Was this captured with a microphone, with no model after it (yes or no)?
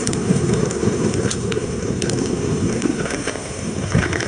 no